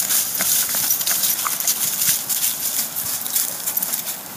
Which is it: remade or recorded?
remade